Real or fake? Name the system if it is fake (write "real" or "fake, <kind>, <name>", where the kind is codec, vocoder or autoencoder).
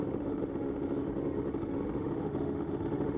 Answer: fake, autoencoder, DAC-VAE